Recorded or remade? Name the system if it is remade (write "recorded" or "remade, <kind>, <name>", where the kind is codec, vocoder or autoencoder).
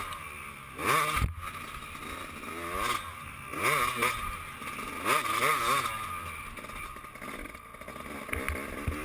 recorded